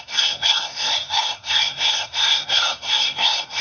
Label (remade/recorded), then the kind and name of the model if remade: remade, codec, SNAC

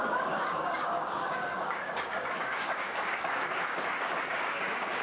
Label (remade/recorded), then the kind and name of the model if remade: remade, codec, DAC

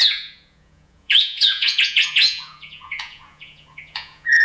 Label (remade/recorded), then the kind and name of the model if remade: remade, vocoder, Vocos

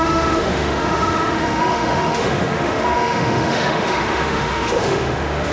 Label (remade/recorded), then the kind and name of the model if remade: remade, autoencoder, DAC-VAE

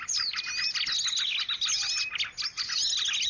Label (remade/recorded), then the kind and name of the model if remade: recorded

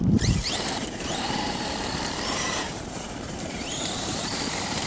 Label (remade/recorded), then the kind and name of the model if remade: remade, vocoder, BigVGAN v2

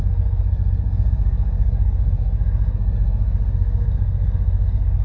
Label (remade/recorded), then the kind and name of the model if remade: remade, codec, SNAC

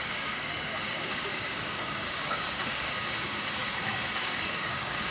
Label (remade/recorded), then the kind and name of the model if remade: remade, codec, DAC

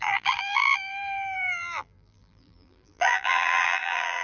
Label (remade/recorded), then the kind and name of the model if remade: remade, vocoder, BigVGAN v2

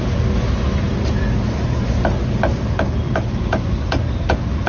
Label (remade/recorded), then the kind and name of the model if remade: recorded